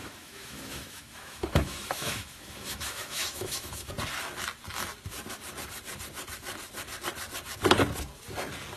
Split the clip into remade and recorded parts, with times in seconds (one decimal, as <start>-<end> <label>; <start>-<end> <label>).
0.0-3.9 remade; 3.9-8.8 recorded